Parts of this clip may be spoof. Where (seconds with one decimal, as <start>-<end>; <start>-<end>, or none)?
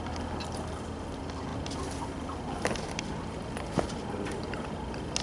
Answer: none